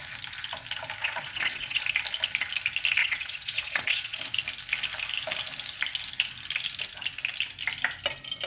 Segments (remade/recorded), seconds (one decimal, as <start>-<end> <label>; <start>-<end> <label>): 0.0-1.0 recorded; 1.0-1.8 remade; 1.8-3.0 recorded; 3.0-4.2 remade; 4.2-8.5 recorded